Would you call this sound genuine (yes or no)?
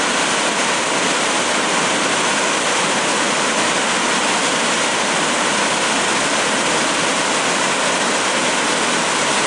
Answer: yes